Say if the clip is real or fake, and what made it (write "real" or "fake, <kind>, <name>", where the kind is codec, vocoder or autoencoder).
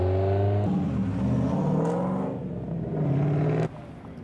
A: real